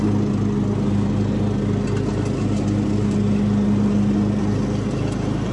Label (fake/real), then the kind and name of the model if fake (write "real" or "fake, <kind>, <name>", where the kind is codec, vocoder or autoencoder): real